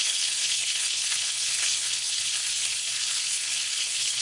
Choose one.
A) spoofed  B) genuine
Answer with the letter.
A